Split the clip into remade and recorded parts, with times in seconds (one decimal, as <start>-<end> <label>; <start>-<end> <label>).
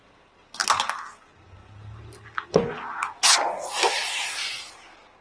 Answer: 0.0-5.2 recorded